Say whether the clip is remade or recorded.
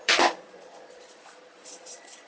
remade